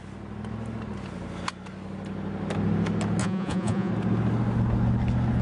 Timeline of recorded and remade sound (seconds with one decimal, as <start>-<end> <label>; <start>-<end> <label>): 0.0-3.2 recorded; 3.2-3.9 remade; 3.9-5.4 recorded